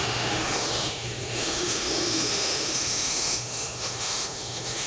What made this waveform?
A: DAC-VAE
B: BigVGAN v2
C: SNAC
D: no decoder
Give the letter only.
A